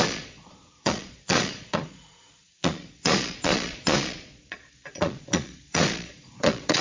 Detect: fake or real fake